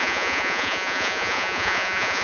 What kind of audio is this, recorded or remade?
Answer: remade